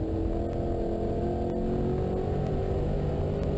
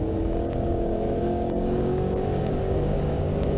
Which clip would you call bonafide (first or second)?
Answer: first